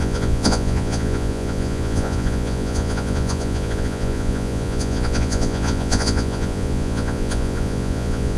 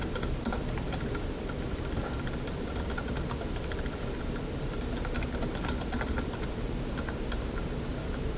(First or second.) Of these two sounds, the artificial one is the first